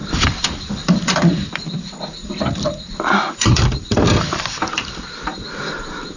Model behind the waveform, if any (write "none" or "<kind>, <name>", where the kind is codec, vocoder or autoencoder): vocoder, BigVGAN v2